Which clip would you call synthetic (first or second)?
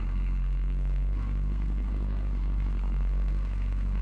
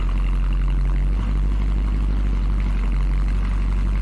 first